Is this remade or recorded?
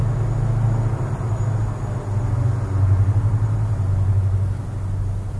recorded